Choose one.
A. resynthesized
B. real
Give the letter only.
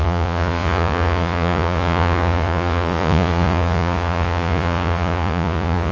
A